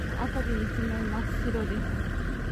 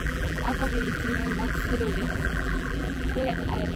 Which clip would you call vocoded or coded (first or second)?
second